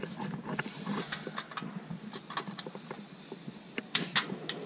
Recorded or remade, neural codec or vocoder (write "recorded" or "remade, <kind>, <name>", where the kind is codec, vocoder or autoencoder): recorded